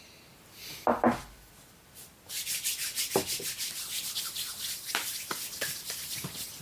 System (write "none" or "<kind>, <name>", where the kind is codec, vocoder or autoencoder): none